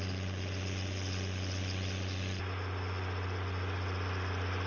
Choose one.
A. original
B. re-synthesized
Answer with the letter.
A